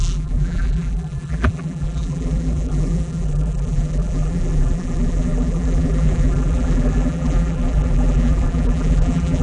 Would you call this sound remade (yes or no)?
yes